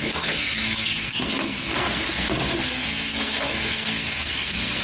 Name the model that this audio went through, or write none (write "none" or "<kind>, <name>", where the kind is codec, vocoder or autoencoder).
codec, SNAC